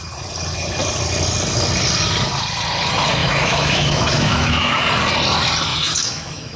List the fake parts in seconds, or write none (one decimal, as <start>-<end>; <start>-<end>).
3.2-4.8; 5.7-6.6